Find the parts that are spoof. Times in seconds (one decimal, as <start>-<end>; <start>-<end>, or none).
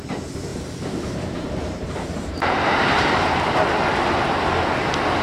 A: 0.5-3.4